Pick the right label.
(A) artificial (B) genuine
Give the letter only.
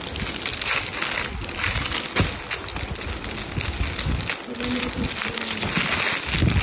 B